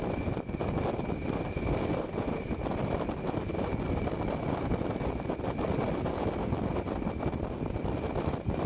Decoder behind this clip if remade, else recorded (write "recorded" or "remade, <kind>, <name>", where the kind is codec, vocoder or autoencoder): recorded